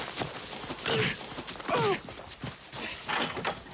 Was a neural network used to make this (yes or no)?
no